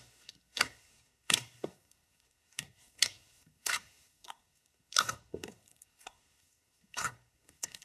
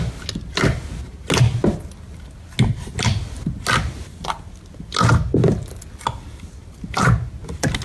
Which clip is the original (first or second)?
second